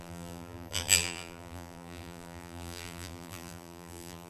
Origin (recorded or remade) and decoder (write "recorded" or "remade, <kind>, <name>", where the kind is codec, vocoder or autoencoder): remade, vocoder, BigVGAN v2